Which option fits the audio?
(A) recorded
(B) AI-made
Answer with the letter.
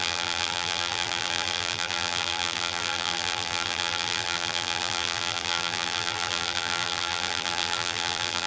B